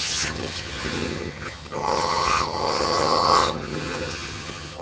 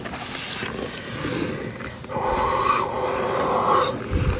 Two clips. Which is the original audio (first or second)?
second